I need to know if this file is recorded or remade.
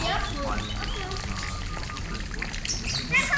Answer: recorded